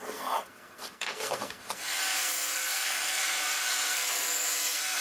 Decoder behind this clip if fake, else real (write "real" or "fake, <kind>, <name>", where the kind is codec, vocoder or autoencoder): fake, codec, SNAC